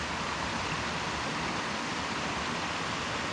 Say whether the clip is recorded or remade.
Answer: recorded